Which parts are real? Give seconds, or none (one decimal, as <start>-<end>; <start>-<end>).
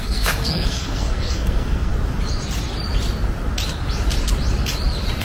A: 1.9-5.2